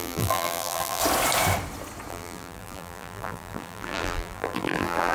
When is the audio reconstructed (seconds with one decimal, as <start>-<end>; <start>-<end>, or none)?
0.0-1.0; 2.1-5.1